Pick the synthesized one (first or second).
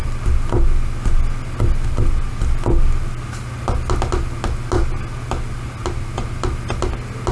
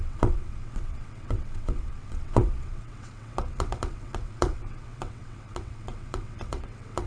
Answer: second